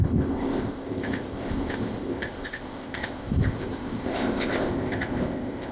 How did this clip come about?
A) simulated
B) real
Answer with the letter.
A